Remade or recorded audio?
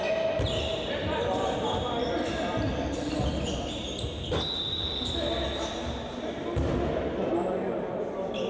recorded